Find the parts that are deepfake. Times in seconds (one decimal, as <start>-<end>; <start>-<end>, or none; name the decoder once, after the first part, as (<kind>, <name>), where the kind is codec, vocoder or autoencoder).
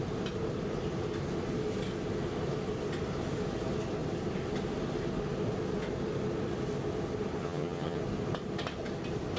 7.4-8.0 (vocoder, HiFi-GAN)